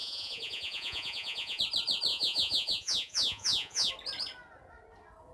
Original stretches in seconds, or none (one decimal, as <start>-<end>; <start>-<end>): 1.6-2.1; 3.9-5.3